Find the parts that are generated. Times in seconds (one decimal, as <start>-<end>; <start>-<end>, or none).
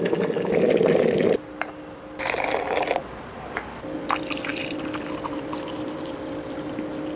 none